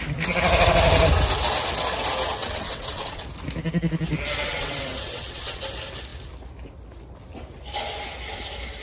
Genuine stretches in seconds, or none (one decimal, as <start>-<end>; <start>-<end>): 0.0-2.4; 3.2-4.5; 5.6-8.8